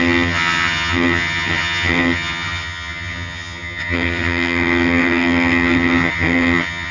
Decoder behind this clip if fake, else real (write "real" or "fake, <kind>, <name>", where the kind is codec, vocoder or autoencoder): fake, vocoder, HiFi-GAN